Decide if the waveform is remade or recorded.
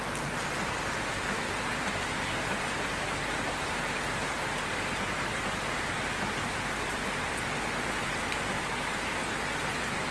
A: recorded